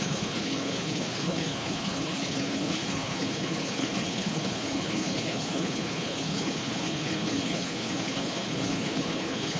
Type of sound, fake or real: fake